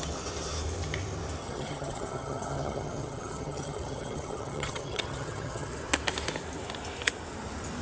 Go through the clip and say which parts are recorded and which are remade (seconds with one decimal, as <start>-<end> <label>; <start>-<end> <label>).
0.0-1.4 recorded; 1.4-5.7 remade; 5.7-7.8 recorded